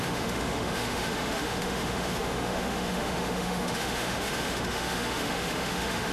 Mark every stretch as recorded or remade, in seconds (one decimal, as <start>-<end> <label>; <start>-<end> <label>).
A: 0.0-6.1 remade